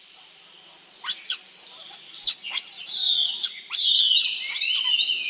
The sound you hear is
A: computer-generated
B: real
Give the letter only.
B